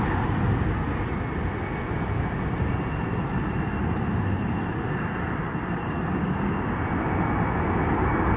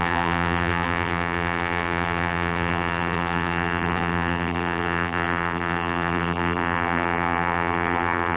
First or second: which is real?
first